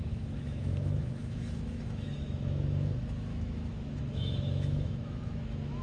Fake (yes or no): yes